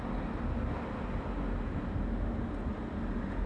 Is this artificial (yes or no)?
no